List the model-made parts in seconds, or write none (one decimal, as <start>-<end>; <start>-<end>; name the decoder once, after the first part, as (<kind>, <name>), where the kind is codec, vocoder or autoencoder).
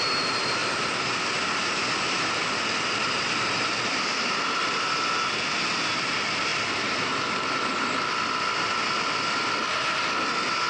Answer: none